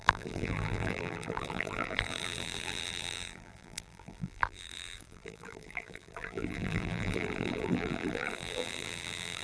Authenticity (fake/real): fake